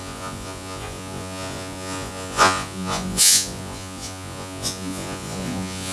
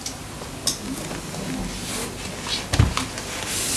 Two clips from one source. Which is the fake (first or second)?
first